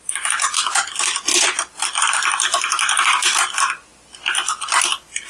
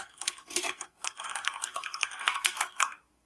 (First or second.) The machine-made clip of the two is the second